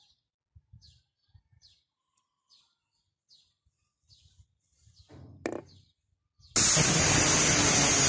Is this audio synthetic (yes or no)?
no